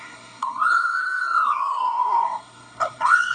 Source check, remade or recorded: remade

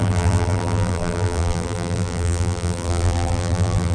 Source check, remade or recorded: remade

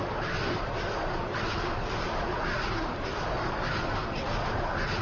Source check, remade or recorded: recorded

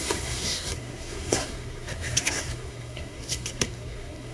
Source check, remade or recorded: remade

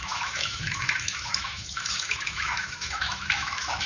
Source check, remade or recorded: remade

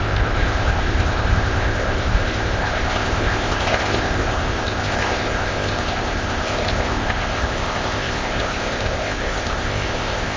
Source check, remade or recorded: remade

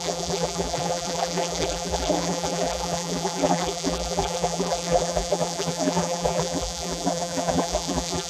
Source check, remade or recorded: remade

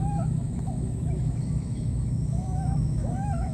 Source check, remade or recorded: remade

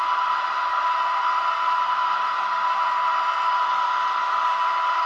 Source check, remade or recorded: remade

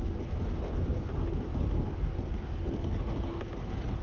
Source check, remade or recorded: recorded